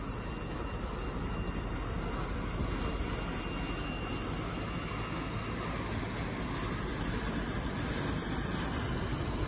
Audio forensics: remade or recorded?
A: recorded